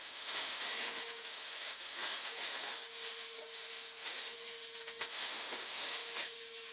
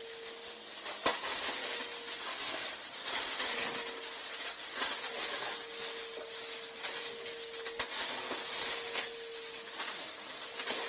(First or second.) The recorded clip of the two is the second